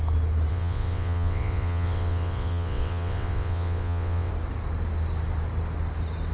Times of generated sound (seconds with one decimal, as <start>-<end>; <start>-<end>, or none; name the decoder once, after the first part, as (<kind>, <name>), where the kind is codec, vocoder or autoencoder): 0.5-4.3 (vocoder, WaveNeXt)